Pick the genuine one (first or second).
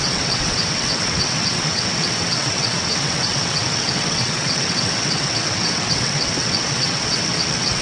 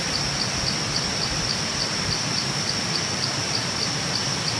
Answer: second